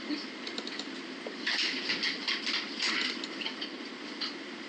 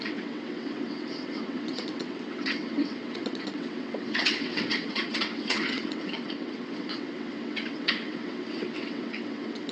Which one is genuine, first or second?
first